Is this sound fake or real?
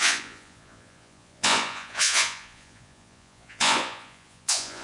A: fake